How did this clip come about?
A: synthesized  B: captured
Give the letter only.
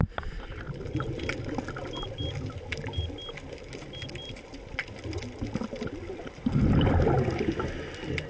B